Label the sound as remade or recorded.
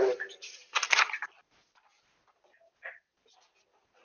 recorded